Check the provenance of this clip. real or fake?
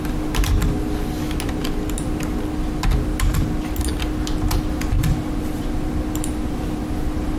real